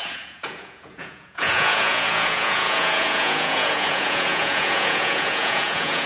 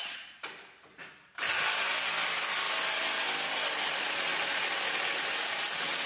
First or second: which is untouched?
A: second